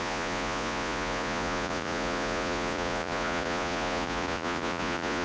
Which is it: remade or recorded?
remade